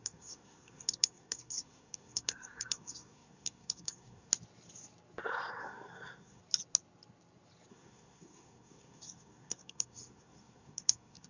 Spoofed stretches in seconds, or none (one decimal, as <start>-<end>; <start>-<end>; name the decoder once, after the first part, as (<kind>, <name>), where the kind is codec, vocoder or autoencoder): 0.0-4.3 (codec, SNAC); 5.6-6.4; 7.7-11.3